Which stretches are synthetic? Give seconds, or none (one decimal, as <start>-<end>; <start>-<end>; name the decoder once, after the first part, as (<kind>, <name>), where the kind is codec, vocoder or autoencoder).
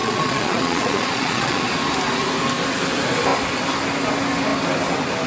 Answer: 0.0-1.6 (vocoder, Vocos)